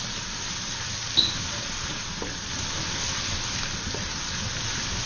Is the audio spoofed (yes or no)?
no